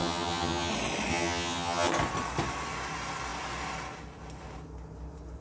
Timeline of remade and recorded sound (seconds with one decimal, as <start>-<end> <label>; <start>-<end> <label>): 0.0-0.7 remade; 0.7-1.1 recorded; 1.1-1.9 remade; 1.9-5.4 recorded